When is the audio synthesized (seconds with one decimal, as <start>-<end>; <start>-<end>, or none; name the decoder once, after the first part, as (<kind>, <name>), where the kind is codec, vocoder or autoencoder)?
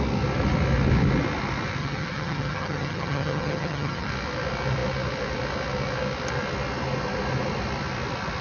1.8-4.1 (vocoder, HiFi-GAN)